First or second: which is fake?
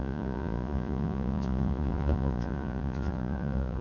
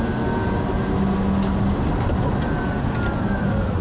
first